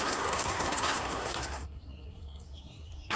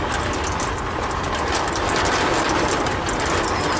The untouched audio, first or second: second